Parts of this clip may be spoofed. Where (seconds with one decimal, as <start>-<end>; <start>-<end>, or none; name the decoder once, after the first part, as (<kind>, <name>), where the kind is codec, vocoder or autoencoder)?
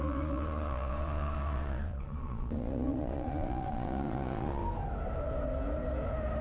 0.0-4.6 (vocoder, Vocos)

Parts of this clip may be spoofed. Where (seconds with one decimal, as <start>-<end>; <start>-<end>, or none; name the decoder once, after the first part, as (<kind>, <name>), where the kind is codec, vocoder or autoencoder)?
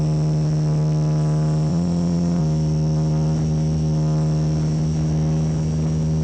1.7-2.4 (vocoder, Vocos)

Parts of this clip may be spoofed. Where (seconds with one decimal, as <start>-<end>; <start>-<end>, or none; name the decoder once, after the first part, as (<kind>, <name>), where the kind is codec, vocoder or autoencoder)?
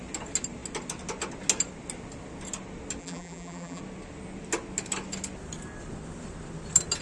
3.0-3.8 (vocoder, BigVGAN v2)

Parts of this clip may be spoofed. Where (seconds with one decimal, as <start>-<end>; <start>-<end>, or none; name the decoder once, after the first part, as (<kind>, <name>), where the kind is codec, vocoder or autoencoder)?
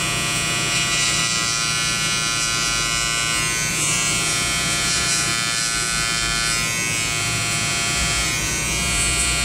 0.0-1.2 (vocoder, Vocos); 3.7-5.3; 7.2-9.4